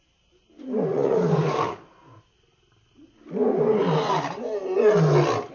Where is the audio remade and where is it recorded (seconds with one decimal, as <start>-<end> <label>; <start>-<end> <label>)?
0.0-0.9 recorded; 0.9-1.6 remade; 1.6-5.5 recorded